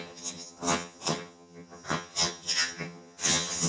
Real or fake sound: fake